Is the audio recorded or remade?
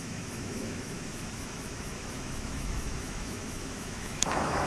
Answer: remade